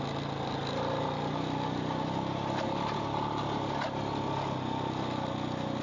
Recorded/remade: recorded